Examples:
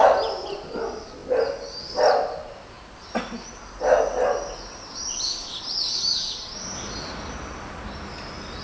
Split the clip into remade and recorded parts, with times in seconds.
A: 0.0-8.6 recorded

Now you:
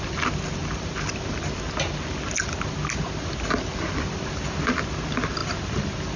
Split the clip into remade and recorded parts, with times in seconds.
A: 0.0-6.2 recorded

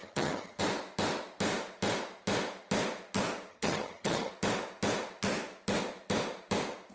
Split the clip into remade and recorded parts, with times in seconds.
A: 0.0-0.6 remade; 0.6-3.5 recorded; 3.5-4.3 remade; 4.3-6.9 recorded

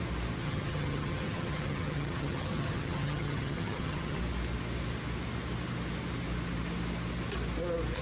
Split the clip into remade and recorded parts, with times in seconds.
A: 0.0-0.4 recorded; 0.4-4.2 remade; 4.2-8.0 recorded

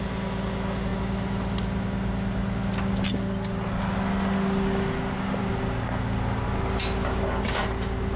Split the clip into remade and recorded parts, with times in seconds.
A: 0.0-8.2 recorded

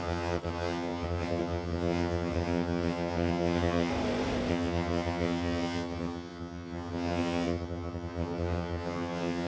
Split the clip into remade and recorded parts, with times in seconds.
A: 0.0-3.9 remade; 3.9-4.5 recorded; 4.5-9.5 remade